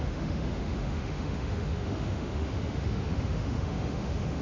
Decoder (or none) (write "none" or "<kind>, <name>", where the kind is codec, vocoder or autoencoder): autoencoder, DAC-VAE